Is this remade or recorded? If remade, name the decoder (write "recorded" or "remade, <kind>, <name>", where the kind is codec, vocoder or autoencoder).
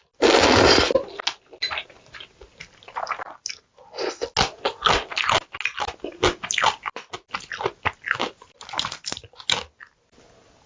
recorded